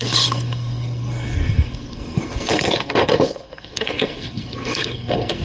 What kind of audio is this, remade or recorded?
remade